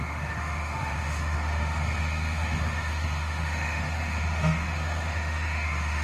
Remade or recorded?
remade